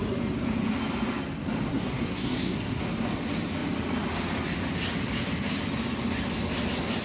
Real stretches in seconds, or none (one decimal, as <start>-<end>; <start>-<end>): 0.0-1.7; 2.8-7.0